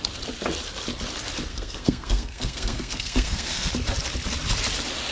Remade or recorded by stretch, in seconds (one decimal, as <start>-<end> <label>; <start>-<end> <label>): 0.0-1.5 recorded; 1.5-3.7 remade; 3.7-5.1 recorded